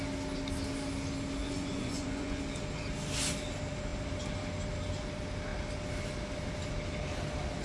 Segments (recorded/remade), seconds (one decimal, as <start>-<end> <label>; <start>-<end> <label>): 0.0-1.4 recorded; 1.4-2.4 remade; 2.4-7.6 recorded